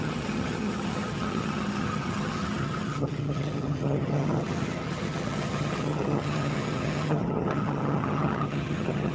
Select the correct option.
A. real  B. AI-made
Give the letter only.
B